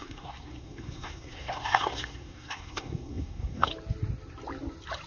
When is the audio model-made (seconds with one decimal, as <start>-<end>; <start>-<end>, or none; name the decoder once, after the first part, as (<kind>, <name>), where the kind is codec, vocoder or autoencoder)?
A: 0.0-3.7 (codec, SNAC)